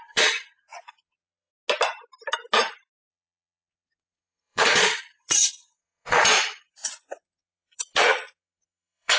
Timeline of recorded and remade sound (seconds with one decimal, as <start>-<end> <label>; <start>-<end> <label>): 0.0-1.5 remade; 1.5-3.1 recorded; 3.1-9.2 remade